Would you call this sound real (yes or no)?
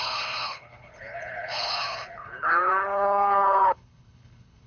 no